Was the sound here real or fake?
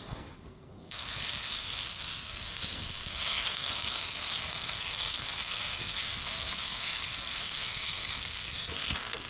fake